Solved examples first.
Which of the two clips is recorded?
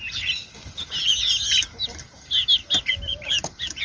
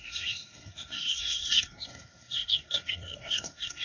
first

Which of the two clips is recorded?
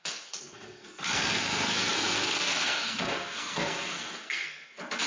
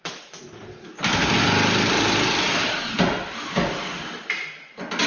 second